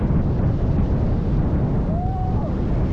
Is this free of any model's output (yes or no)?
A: no